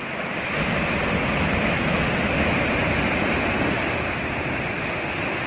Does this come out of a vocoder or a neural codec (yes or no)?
no